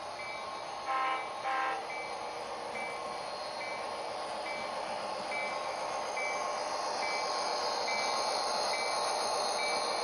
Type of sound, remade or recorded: recorded